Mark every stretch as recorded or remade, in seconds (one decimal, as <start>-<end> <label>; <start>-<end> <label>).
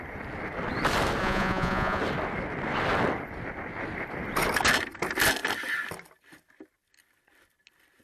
0.0-1.2 recorded; 1.2-2.0 remade; 2.0-8.0 recorded